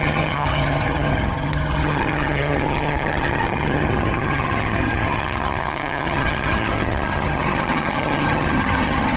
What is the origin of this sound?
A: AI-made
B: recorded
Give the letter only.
A